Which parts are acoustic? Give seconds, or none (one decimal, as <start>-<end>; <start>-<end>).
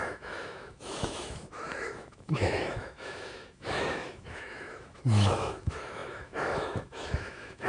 none